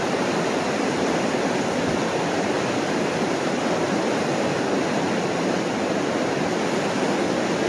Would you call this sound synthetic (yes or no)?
no